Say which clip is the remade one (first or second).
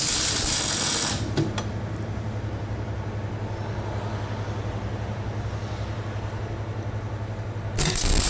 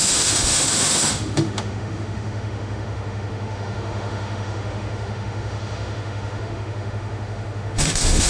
second